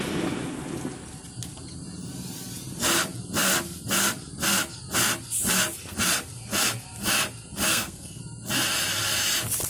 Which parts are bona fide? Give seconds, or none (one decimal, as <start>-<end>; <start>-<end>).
0.0-7.7; 8.2-9.7